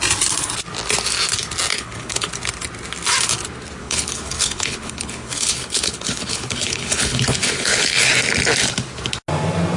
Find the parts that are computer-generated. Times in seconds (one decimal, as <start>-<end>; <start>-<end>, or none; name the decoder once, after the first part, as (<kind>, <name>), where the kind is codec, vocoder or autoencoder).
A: 1.7-2.3 (codec, HILCodec); 3.8-8.1